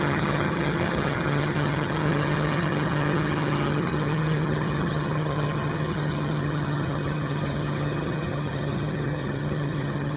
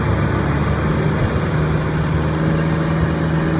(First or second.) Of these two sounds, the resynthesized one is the first